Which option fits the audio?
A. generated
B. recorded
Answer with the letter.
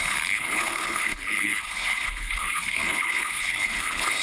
A